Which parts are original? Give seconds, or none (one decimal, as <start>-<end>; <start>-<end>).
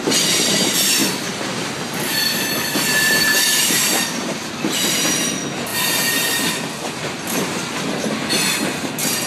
0.0-1.0; 5.2-9.3